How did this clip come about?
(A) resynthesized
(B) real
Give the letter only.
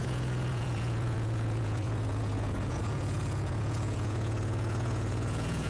A